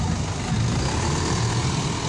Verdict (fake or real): real